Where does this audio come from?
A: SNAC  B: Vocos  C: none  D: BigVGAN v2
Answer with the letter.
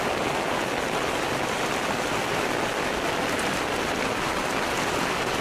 C